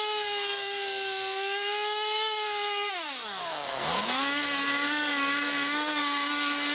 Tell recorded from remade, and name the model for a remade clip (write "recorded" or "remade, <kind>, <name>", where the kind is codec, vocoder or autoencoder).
remade, codec, SNAC